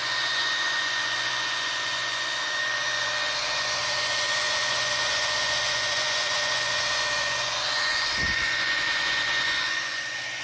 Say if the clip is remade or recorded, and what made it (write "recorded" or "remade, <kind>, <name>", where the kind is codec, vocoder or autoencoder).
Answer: remade, vocoder, Vocos